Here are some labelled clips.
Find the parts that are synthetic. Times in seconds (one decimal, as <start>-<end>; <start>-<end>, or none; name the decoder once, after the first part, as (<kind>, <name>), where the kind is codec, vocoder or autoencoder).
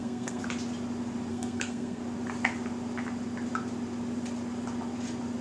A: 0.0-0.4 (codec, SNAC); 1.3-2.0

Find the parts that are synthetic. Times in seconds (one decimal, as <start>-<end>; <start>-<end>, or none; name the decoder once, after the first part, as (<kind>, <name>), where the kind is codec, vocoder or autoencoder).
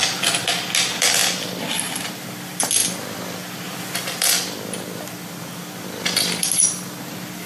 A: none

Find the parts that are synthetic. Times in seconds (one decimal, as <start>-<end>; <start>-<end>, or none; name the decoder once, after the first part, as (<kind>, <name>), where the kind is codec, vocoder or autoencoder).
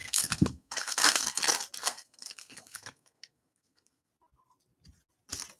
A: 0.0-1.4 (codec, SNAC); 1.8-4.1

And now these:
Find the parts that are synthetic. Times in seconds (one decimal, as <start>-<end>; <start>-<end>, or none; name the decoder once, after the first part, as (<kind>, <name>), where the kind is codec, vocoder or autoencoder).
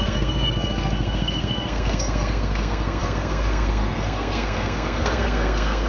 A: 0.0-5.9 (codec, SNAC)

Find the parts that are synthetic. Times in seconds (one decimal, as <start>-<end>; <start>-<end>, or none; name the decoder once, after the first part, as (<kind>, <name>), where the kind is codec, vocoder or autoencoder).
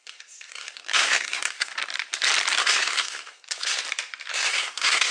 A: 0.0-1.7 (codec, SNAC); 2.6-3.8; 4.3-5.1